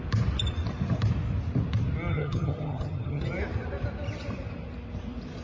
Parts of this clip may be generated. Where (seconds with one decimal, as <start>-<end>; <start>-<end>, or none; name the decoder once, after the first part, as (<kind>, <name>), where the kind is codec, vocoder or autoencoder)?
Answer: 2.1-3.3 (vocoder, HiFi-GAN)